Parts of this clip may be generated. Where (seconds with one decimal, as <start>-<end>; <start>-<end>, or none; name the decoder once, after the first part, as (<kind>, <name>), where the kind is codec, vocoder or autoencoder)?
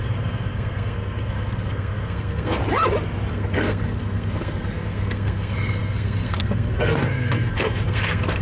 0.0-2.6 (codec, SNAC); 3.3-8.4